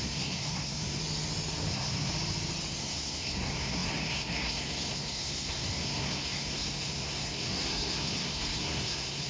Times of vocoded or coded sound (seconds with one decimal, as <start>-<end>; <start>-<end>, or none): 0.0-1.0; 1.7-2.1; 2.8-9.3